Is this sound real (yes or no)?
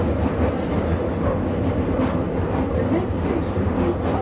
yes